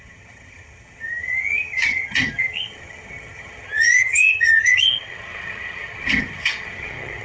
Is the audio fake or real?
fake